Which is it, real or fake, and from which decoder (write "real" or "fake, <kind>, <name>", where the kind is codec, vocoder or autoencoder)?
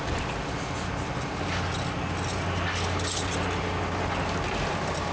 real